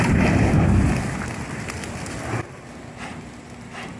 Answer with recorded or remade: recorded